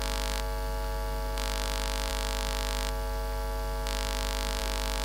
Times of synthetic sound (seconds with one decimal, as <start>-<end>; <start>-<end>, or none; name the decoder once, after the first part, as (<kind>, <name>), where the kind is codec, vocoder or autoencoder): none